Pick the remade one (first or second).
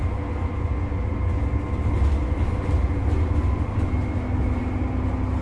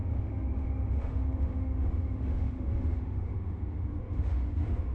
second